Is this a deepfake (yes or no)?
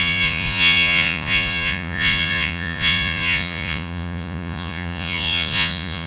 yes